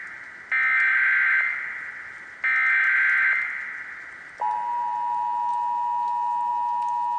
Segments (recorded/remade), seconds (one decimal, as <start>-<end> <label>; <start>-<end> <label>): 0.0-7.2 recorded